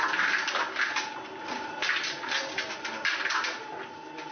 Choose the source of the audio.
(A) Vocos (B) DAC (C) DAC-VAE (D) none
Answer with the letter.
D